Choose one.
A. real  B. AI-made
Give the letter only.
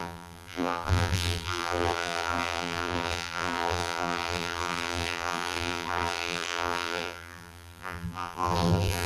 B